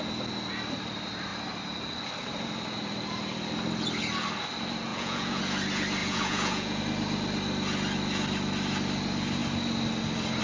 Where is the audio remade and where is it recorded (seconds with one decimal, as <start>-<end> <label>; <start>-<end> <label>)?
0.0-4.9 recorded; 4.9-5.4 remade; 5.4-6.0 recorded; 6.0-6.8 remade; 6.8-10.4 recorded